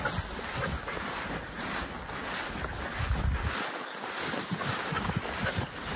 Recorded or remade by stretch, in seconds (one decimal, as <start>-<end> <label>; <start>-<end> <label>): 0.0-6.0 recorded